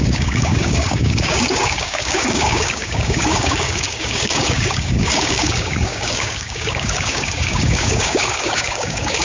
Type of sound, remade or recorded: remade